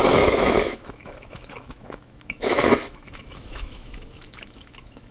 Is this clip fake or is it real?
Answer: fake